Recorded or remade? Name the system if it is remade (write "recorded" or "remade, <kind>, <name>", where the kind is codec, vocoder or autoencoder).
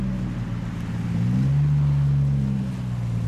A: recorded